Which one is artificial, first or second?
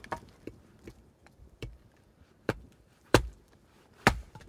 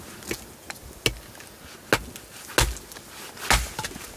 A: first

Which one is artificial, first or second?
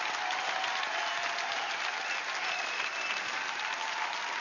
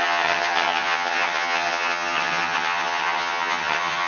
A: second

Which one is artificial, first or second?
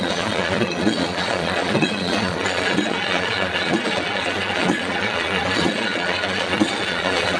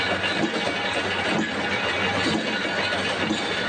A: first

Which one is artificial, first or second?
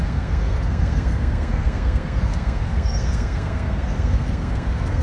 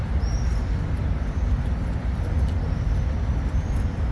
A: first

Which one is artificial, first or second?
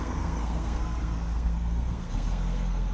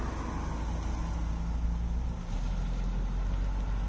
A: first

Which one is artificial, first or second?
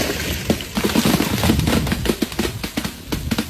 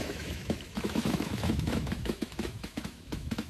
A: second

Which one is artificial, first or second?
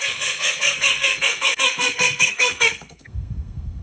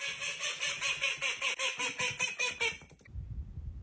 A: first